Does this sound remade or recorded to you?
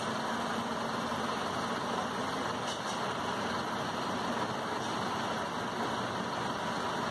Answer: recorded